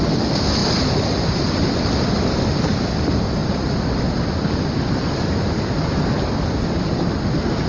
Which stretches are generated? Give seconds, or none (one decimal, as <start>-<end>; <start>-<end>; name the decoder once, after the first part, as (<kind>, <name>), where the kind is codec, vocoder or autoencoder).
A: 0.6-1.9 (vocoder, BigVGAN v2); 3.4-4.7